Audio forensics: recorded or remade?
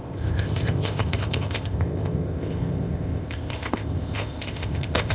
remade